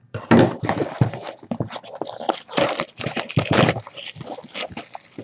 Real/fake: fake